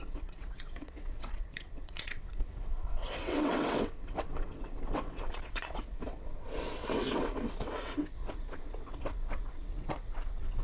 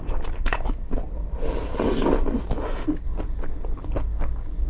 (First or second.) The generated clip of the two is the first